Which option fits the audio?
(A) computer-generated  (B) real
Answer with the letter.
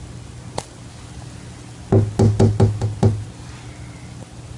B